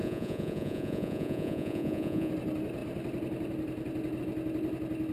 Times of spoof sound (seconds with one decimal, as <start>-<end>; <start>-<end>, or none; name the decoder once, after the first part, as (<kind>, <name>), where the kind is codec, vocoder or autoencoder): 0.0-2.3 (vocoder, Vocos)